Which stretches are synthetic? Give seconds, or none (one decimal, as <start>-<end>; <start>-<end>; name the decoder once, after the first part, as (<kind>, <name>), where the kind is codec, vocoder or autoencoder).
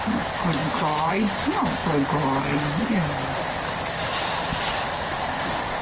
0.6-1.1 (vocoder, BigVGAN v2)